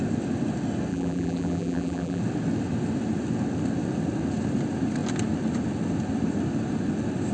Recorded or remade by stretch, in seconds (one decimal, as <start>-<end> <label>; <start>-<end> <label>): 0.0-0.9 recorded; 0.9-2.2 remade; 2.2-7.3 recorded